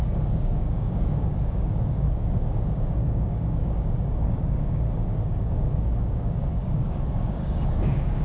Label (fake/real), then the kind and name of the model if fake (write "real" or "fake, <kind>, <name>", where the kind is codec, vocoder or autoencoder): fake, codec, DAC